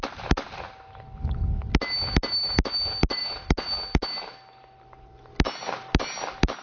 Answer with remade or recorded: recorded